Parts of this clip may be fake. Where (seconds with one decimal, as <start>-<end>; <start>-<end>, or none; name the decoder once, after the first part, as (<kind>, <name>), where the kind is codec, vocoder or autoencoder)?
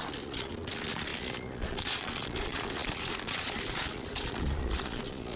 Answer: 0.0-5.4 (vocoder, Vocos)